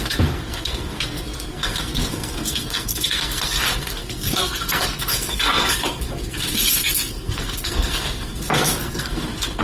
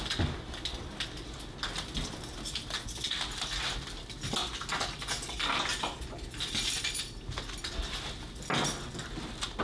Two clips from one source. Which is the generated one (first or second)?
first